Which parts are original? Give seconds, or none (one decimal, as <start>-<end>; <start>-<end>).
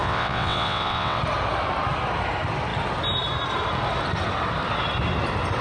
1.2-5.6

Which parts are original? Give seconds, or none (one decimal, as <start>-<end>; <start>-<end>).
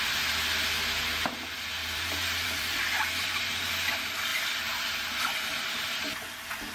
0.0-1.8; 3.7-6.7